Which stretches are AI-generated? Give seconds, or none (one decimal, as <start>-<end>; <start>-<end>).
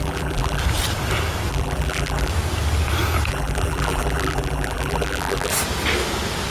0.0-0.6; 1.5-2.3; 3.3-5.5